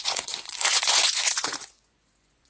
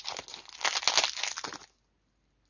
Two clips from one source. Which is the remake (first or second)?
first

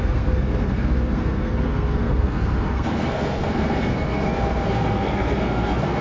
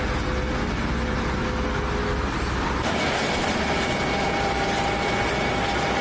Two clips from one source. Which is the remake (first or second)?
first